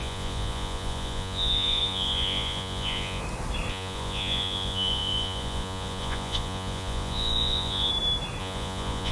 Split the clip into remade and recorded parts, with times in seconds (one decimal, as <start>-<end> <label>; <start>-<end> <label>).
0.0-3.2 remade; 3.2-3.7 recorded; 3.7-7.9 remade; 7.9-8.4 recorded; 8.4-9.1 remade